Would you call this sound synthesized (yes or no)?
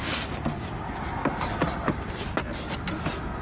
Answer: no